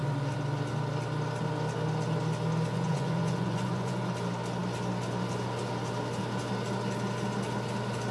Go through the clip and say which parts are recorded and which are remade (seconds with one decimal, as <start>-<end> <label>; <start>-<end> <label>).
0.0-2.7 recorded; 2.7-4.1 remade; 4.1-8.1 recorded